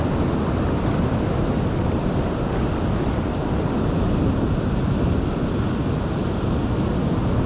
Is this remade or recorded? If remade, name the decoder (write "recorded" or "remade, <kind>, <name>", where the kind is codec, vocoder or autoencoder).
recorded